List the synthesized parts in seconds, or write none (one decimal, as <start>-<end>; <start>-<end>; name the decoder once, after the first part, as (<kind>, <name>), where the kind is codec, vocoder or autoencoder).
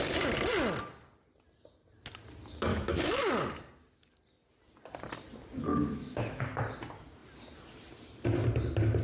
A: 2.7-3.3 (autoencoder, DAC-VAE); 5.7-6.4